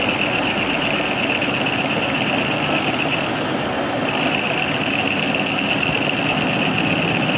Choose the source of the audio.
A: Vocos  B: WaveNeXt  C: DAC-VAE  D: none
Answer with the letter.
D